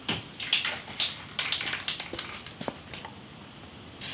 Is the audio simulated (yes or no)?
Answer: no